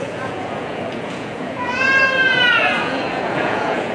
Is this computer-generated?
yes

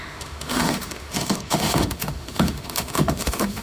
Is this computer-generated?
yes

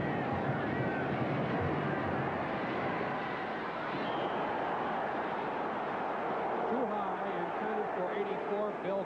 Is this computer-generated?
no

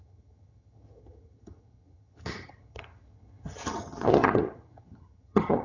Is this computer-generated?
yes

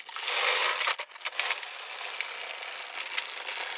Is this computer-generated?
no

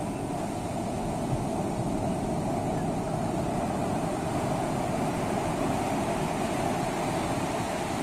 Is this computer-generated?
no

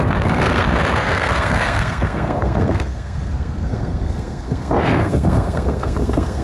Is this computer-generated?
yes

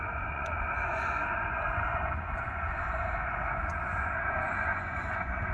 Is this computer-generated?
yes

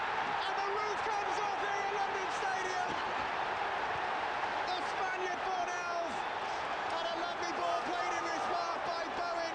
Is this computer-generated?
no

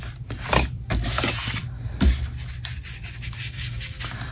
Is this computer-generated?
no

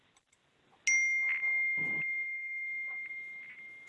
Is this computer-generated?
no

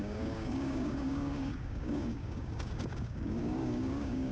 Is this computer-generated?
yes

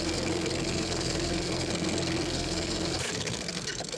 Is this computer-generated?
yes